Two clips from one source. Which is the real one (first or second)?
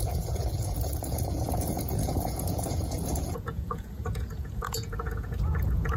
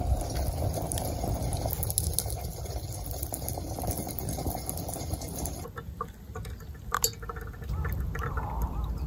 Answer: second